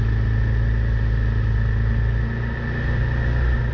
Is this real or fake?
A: real